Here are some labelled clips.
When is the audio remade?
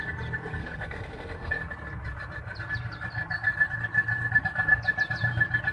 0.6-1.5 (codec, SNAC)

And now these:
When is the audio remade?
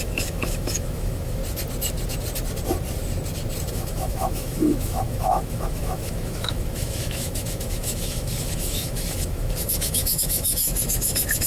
0.0-1.4 (autoencoder, DAC-VAE); 3.7-11.5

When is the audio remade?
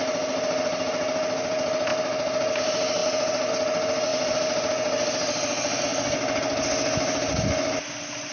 none